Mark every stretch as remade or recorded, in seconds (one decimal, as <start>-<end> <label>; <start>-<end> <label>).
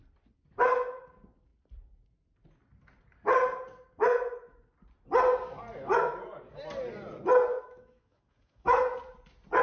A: 0.0-7.5 recorded; 7.5-8.8 remade; 8.8-9.6 recorded